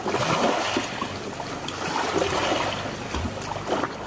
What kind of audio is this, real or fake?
real